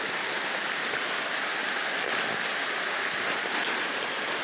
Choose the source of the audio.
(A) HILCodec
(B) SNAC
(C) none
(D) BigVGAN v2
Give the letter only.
C